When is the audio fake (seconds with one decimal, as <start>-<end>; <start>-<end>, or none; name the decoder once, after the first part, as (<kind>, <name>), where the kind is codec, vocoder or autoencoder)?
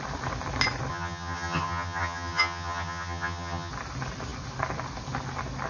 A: 0.9-3.7 (vocoder, HiFi-GAN)